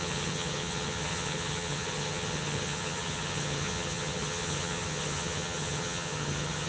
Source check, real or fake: fake